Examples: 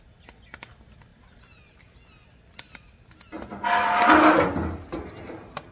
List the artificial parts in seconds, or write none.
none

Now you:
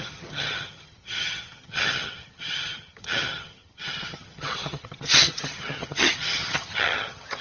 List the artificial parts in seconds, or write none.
0.0-7.4 (vocoder, HiFi-GAN)

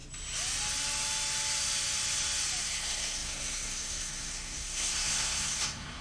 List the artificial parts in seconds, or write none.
2.6-6.0 (codec, SNAC)

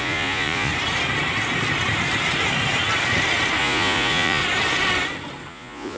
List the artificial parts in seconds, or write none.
0.0-0.7 (vocoder, Vocos); 3.6-4.4; 5.5-6.0

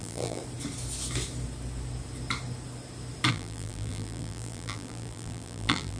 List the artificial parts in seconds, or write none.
0.0-0.4 (vocoder, BigVGAN v2); 3.3-6.0

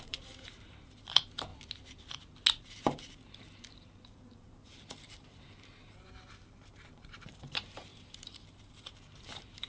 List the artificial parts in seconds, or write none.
0.0-1.5 (vocoder, BigVGAN v2); 2.6-9.7

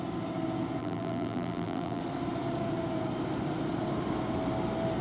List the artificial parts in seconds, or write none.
0.8-2.0 (vocoder, BigVGAN v2)

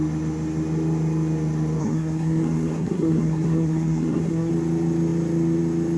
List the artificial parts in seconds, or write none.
1.8-4.5 (codec, SNAC)